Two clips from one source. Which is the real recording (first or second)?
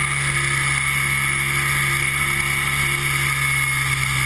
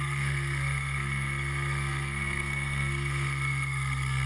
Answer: first